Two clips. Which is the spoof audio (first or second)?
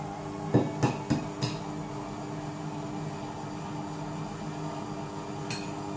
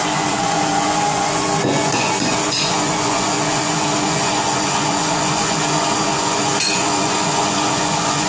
second